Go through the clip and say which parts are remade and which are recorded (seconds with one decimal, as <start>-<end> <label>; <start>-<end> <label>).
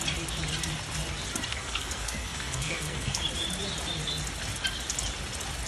0.0-1.5 recorded; 1.5-3.2 remade; 3.2-5.7 recorded